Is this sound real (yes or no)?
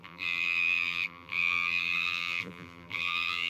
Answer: no